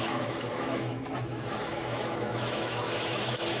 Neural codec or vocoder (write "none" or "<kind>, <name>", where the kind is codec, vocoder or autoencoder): autoencoder, DAC-VAE